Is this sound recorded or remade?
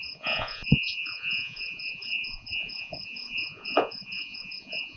remade